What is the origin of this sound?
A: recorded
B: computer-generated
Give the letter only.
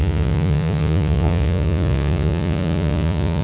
B